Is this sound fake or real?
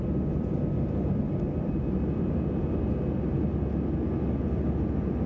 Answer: real